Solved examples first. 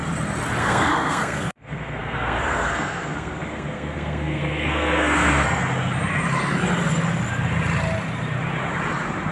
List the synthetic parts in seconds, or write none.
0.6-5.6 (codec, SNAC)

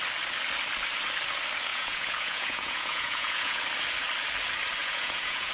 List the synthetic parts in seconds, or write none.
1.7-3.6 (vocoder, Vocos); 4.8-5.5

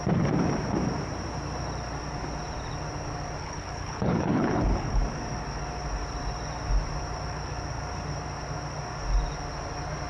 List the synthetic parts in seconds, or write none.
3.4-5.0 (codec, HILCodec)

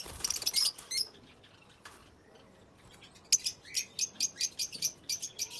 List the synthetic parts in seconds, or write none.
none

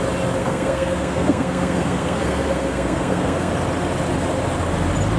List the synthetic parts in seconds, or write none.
0.4-3.5 (codec, SNAC)

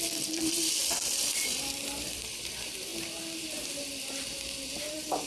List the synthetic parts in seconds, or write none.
0.0-2.9 (vocoder, BigVGAN v2); 4.8-5.3

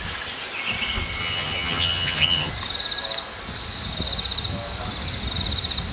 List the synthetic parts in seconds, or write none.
1.2-2.5 (vocoder, HiFi-GAN)